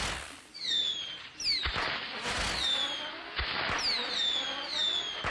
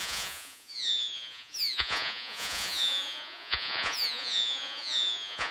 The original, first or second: first